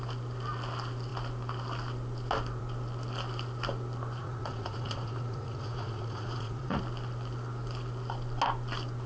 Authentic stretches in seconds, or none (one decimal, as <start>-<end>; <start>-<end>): 0.0-4.2; 6.8-9.1